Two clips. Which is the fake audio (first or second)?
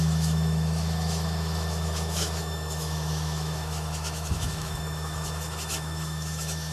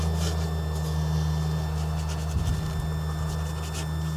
first